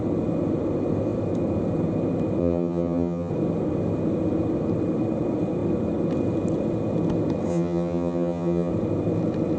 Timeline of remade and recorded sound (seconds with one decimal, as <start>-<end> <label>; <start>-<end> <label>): 0.0-2.4 recorded; 2.4-3.3 remade; 3.3-7.5 recorded; 7.5-8.7 remade; 8.7-9.6 recorded